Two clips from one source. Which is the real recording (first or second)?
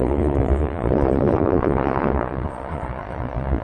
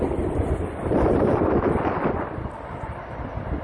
second